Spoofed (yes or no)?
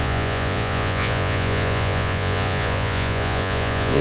yes